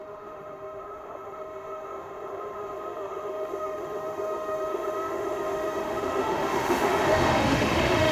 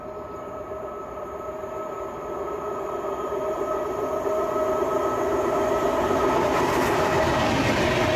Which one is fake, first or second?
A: first